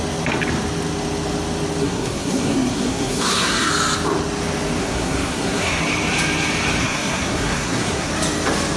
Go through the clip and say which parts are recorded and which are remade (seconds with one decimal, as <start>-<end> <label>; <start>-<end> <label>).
0.0-1.8 recorded; 1.8-3.7 remade; 3.7-4.8 recorded; 4.8-5.8 remade; 5.8-6.8 recorded; 6.8-8.1 remade; 8.1-8.8 recorded